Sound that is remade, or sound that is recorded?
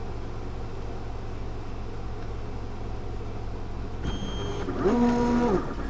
recorded